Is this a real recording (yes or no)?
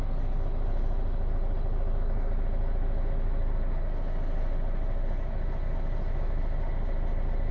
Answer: yes